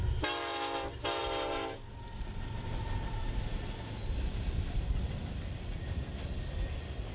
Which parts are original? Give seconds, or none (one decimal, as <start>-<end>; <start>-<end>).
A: 0.0-7.1